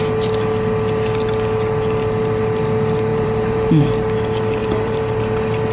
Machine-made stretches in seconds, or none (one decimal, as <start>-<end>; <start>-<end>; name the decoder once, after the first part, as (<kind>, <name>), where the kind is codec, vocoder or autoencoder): 3.1-3.7 (vocoder, BigVGAN v2); 4.6-5.1